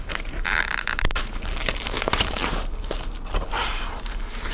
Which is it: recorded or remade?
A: remade